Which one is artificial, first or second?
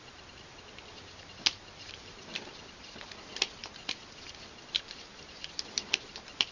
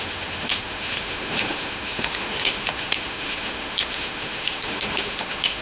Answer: second